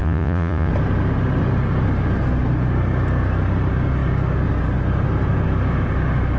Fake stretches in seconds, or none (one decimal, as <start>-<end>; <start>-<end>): 0.0-0.7